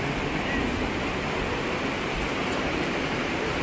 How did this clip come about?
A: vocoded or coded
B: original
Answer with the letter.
B